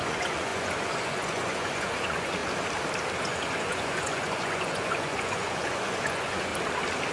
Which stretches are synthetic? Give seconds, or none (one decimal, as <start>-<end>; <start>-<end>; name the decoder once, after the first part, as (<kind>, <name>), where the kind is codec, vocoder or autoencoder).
0.0-2.4 (vocoder, Vocos); 3.2-6.5